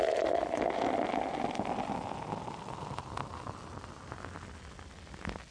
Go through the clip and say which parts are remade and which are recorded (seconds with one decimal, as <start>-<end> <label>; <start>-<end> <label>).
0.0-5.5 recorded